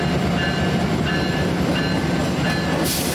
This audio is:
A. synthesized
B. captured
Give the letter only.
B